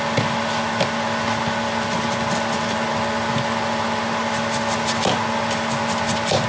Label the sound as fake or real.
real